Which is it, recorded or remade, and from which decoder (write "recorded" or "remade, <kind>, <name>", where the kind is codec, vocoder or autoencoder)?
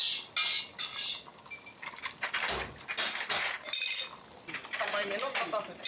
recorded